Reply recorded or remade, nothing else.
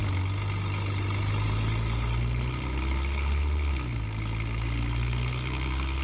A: recorded